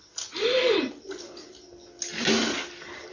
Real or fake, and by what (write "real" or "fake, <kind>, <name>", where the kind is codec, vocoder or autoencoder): real